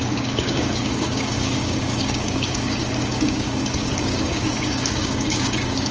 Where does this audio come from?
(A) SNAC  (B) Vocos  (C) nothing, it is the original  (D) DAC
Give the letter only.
D